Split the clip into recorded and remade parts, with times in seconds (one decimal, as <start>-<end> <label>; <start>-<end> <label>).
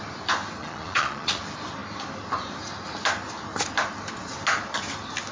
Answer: 0.0-0.6 recorded; 0.6-1.4 remade; 1.4-5.3 recorded